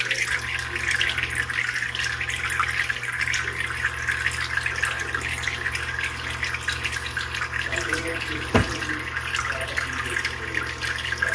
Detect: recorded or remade recorded